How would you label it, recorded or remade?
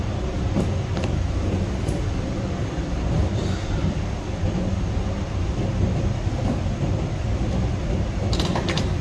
remade